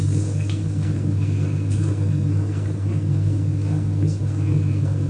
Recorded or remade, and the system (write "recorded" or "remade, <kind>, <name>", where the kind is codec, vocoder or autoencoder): remade, codec, SNAC